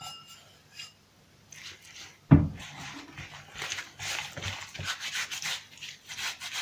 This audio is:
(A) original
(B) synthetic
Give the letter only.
B